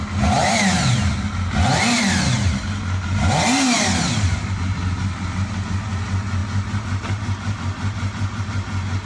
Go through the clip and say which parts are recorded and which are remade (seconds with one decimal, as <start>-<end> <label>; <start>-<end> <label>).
0.0-9.1 recorded